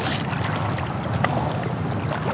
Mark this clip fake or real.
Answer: real